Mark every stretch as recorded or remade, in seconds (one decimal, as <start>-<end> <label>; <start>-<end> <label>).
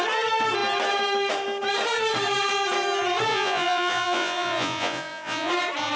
0.0-3.3 recorded; 3.3-5.5 remade; 5.5-6.0 recorded